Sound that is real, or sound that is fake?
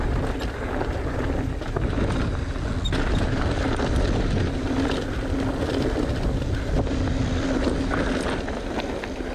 real